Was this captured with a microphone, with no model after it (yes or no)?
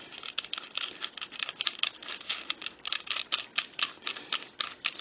yes